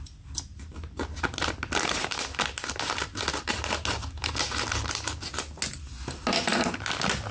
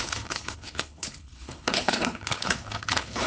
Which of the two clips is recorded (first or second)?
first